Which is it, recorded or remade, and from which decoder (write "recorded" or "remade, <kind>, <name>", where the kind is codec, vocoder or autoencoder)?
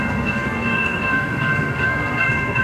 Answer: remade, codec, SNAC